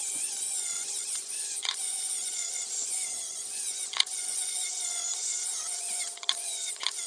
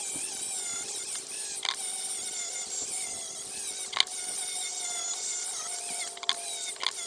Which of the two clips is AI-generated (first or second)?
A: first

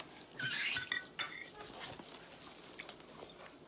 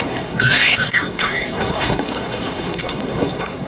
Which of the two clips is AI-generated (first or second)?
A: second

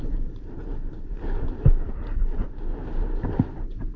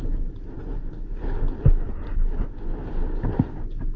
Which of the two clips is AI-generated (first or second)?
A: first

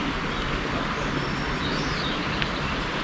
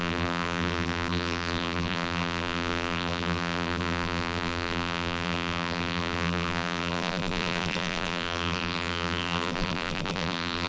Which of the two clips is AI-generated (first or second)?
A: second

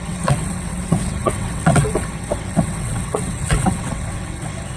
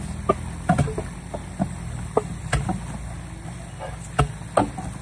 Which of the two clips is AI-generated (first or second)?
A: first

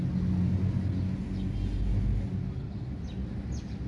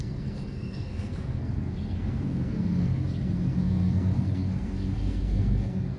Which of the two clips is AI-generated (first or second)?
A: second